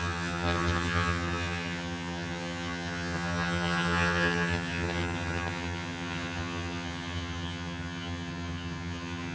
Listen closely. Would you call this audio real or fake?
fake